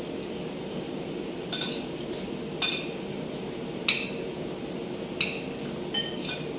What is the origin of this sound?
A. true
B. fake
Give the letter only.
A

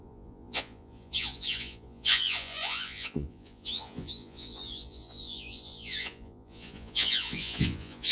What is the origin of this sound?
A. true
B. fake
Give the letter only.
B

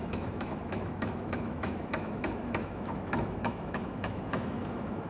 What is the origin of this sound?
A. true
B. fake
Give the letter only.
B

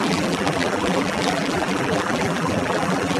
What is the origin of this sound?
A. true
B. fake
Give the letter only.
B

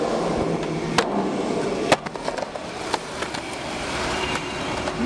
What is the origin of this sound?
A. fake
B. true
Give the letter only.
A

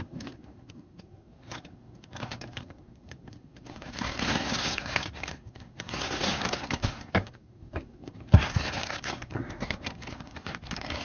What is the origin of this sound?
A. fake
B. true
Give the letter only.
A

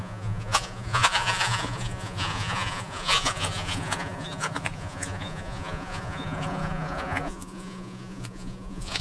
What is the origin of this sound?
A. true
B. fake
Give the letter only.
B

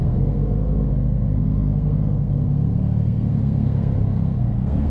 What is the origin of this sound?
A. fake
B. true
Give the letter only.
A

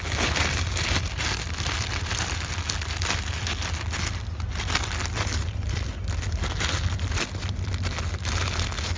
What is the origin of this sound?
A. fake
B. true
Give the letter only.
B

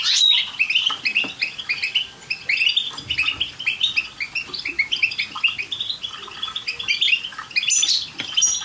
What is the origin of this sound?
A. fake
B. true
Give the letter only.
B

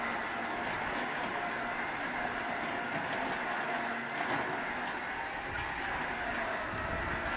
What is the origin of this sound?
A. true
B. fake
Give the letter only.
A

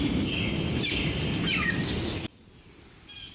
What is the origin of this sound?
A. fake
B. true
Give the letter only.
B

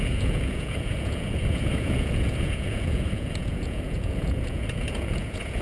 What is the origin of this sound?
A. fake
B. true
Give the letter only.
A